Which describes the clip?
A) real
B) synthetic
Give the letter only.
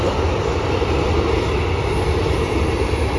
A